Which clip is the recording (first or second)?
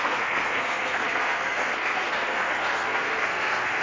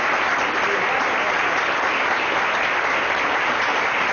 second